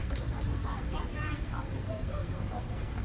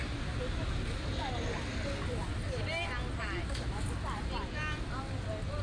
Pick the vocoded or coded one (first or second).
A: first